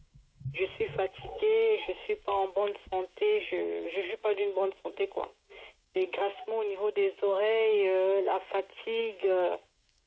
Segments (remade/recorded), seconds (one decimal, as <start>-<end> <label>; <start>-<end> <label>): 0.0-10.1 remade